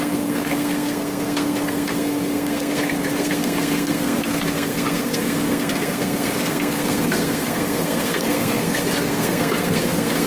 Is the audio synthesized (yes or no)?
yes